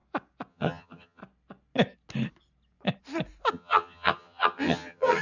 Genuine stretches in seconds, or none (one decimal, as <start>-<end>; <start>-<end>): 0.0-0.5; 1.2-3.5

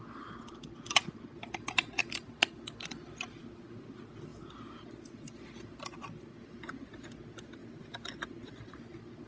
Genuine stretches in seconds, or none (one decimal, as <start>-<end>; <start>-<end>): 0.0-9.3